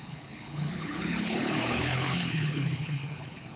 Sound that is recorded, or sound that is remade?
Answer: remade